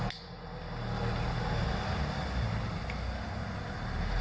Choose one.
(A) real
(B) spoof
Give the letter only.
A